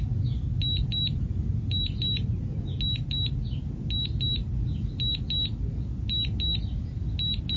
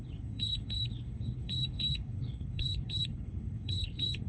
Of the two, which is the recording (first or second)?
first